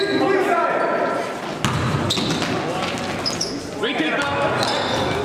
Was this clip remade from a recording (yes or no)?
no